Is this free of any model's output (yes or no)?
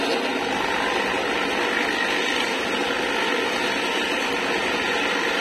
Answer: yes